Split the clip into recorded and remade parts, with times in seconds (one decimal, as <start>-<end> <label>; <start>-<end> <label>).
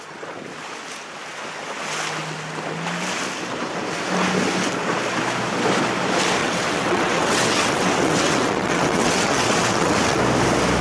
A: 0.0-6.4 recorded; 6.4-10.2 remade; 10.2-10.8 recorded